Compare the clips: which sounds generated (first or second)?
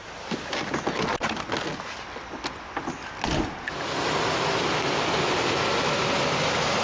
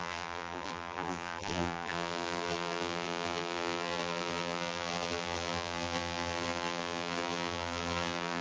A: second